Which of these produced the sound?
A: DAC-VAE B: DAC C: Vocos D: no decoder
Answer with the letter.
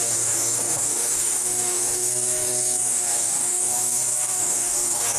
B